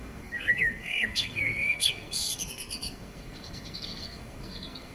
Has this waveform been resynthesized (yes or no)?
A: yes